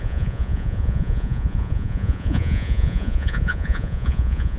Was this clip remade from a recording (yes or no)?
yes